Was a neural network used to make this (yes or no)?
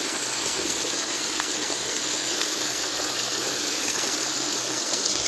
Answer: yes